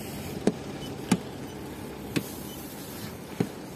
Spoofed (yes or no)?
no